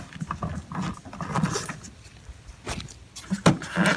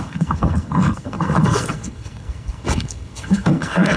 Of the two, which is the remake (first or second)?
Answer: second